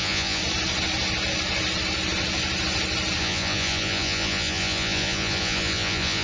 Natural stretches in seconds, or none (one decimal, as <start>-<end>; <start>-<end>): 0.4-3.2